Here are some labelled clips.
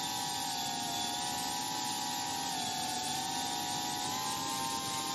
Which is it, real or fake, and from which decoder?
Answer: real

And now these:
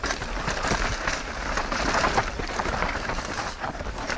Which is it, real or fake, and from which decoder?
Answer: real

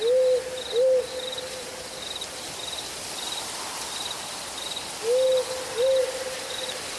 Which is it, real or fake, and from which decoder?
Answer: real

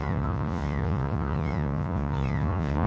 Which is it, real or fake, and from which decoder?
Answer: fake, vocoder, Vocos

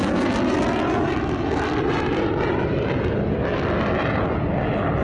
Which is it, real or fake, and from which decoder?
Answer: real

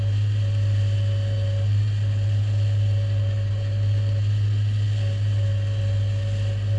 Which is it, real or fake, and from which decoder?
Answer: real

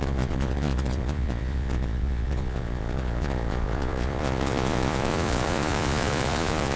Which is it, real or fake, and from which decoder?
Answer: fake, vocoder, Vocos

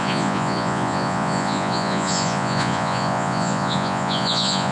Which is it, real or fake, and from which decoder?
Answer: fake, vocoder, Vocos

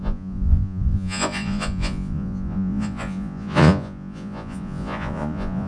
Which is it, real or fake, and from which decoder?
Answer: fake, vocoder, Vocos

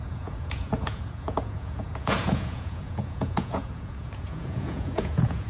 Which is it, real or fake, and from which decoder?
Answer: fake, vocoder, Vocos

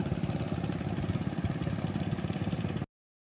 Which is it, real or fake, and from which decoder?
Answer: real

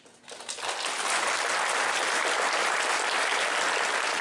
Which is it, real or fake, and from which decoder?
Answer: real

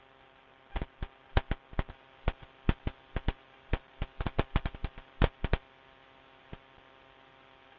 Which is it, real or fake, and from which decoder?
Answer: real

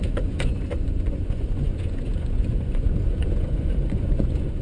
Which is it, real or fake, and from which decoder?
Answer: fake, vocoder, Vocos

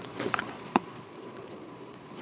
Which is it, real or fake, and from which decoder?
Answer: fake, vocoder, Vocos